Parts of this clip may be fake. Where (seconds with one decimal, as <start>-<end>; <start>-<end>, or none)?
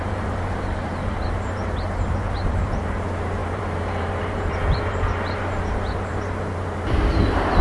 0.0-1.6; 2.2-7.6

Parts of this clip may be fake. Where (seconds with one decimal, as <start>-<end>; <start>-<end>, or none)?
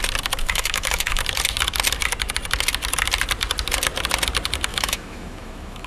0.4-1.2; 4.7-5.9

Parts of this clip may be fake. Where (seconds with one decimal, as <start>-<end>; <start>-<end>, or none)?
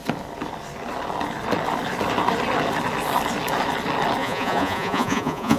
4.2-5.6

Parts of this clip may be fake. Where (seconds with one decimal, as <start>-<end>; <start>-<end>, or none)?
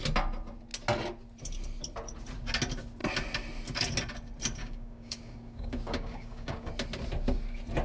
4.6-6.7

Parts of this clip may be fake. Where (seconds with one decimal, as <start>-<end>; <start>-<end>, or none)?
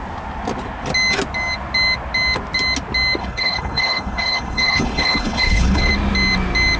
3.2-5.9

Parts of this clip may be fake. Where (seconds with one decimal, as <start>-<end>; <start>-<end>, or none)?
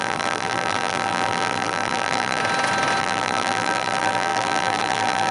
0.0-2.4; 3.0-5.3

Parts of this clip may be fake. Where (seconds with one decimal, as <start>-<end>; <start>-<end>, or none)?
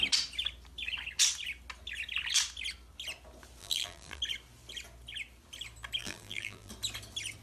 3.6-4.2; 6.0-6.7